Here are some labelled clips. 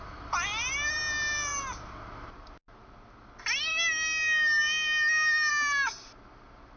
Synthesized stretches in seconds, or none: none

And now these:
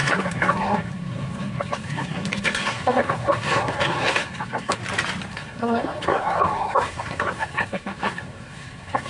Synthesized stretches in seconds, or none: 0.0-4.8 (codec, SNAC); 5.3-9.1